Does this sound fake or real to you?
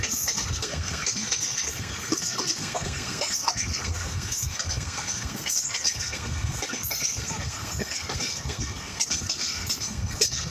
fake